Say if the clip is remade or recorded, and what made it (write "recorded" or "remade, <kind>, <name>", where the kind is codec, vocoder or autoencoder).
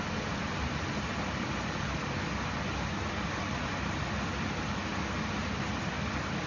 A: recorded